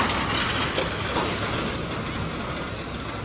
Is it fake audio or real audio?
real